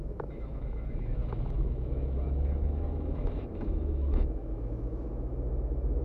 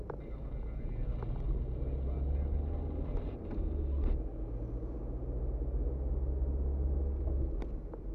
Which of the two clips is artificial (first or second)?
first